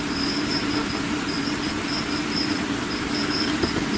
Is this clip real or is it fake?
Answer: real